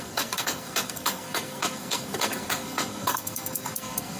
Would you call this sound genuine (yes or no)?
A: no